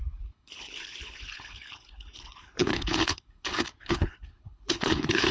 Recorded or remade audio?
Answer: remade